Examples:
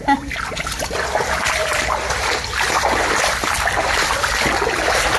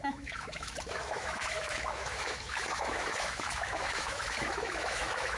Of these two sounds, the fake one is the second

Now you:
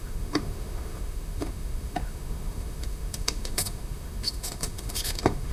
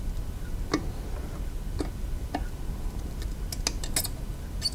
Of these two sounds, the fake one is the first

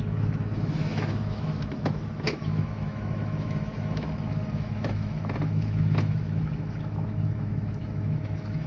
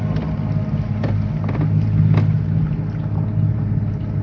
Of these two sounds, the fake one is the first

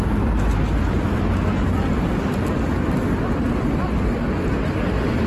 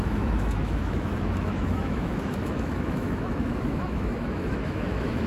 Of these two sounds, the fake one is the second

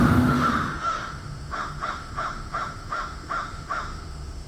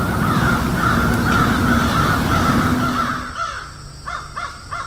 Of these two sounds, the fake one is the first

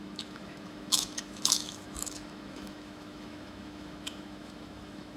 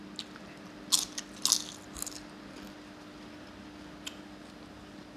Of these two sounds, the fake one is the first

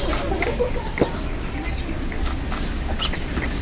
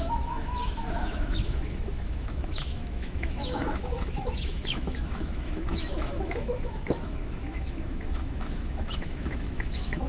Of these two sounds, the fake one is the second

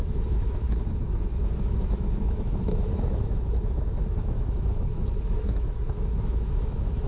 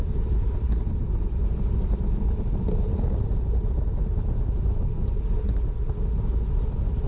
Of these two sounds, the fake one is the first